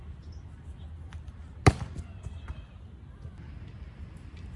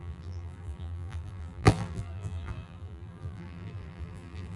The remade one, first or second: second